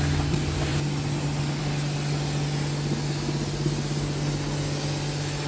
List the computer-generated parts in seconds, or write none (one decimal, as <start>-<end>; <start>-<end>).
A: none